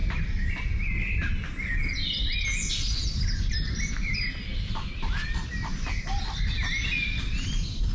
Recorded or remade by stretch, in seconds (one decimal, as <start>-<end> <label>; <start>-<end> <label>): 0.0-7.9 recorded